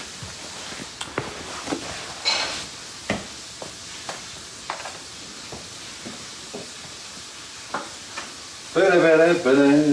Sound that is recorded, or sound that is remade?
recorded